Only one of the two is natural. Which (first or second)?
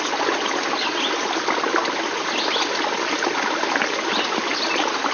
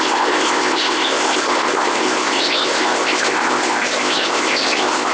first